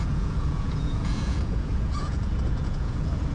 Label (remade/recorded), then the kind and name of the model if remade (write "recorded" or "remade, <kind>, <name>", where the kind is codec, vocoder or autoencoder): remade, vocoder, Vocos